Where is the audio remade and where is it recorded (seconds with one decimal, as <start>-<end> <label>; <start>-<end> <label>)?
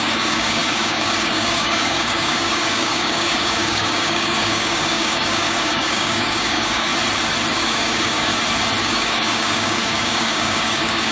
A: 0.0-6.9 remade; 6.9-7.5 recorded; 7.5-8.3 remade; 8.3-8.8 recorded; 8.8-11.1 remade